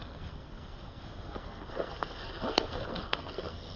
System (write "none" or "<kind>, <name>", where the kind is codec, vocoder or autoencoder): codec, SNAC